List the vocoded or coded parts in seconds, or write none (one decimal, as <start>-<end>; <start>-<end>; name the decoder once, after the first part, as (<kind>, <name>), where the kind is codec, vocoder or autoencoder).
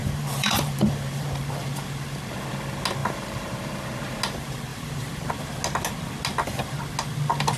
0.0-1.7 (vocoder, BigVGAN v2); 3.0-3.7; 4.7-5.3